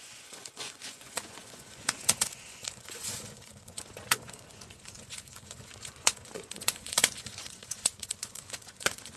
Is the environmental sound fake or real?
fake